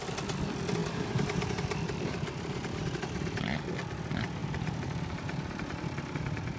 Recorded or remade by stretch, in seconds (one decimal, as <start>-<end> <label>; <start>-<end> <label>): 0.0-0.8 recorded; 0.8-3.4 remade; 3.4-4.4 recorded; 4.4-6.1 remade; 6.1-6.6 recorded